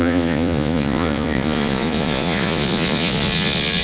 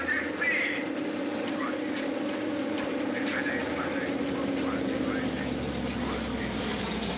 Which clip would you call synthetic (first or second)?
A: first